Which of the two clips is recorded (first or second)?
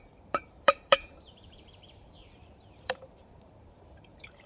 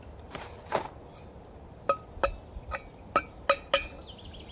second